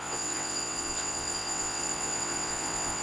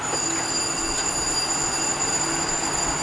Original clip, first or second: second